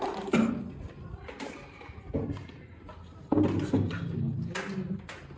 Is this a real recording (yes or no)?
yes